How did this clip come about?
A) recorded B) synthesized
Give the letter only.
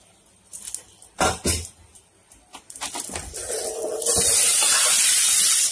A